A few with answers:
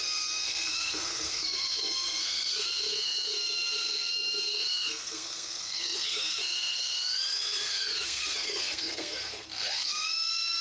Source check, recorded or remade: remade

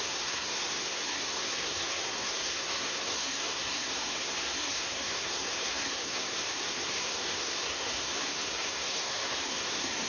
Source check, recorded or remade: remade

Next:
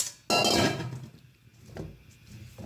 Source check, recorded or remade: recorded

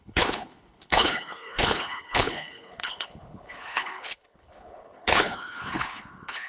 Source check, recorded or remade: remade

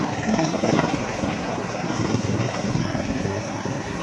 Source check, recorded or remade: remade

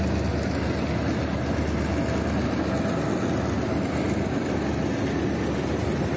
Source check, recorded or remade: recorded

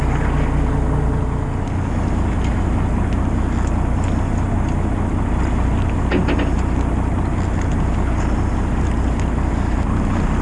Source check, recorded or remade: recorded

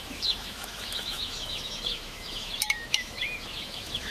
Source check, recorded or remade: remade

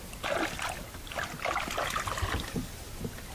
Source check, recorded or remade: recorded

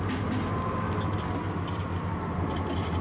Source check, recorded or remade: recorded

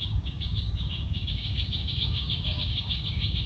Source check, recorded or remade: remade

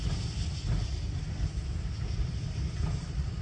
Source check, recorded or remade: recorded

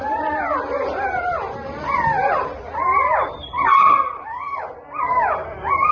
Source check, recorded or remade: recorded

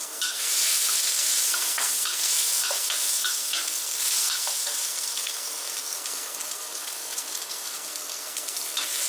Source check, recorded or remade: remade